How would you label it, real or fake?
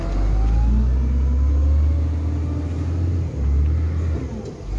real